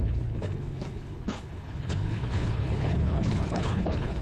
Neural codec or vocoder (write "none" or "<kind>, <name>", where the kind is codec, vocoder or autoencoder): codec, HILCodec